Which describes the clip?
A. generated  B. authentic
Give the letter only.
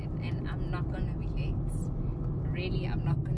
B